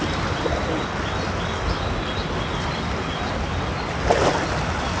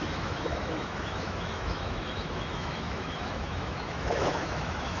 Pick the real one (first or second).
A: first